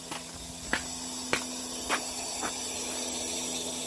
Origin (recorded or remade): recorded